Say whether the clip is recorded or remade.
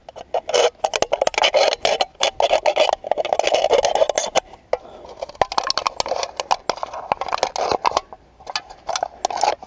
recorded